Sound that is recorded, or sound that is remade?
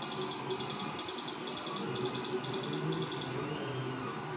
recorded